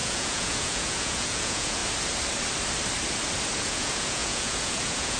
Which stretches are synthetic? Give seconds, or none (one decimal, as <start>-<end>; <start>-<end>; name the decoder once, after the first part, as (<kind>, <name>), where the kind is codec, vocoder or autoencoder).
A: 0.0-1.8 (vocoder, Vocos); 3.6-5.2